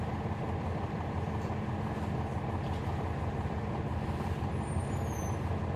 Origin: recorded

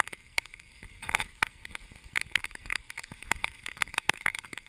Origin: remade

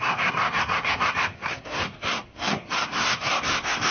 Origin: remade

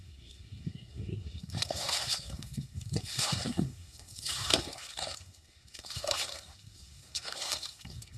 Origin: remade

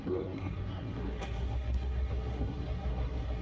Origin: remade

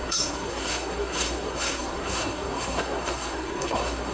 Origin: remade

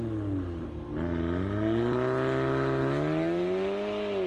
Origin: recorded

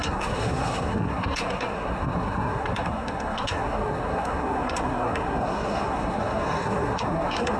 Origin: remade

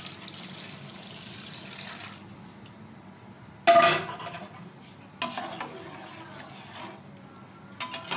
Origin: recorded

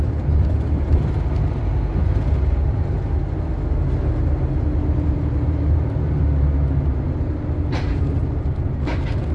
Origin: recorded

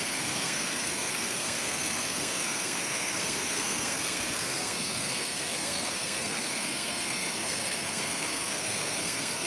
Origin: remade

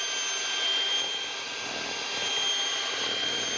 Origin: recorded